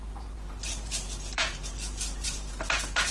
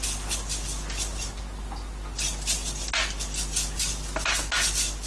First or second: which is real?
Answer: second